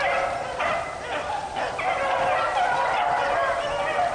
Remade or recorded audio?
recorded